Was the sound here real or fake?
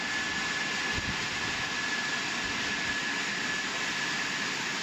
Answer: real